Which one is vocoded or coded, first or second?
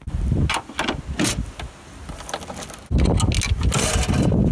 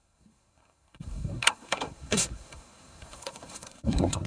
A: second